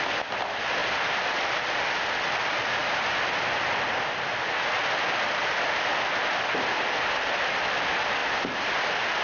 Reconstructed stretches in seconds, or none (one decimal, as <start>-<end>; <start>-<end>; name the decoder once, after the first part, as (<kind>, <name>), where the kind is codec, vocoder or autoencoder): none